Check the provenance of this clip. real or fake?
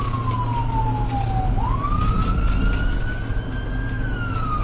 real